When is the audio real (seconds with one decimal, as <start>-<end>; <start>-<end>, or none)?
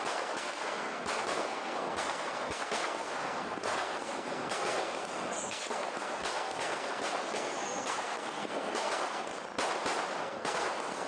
9.3-10.2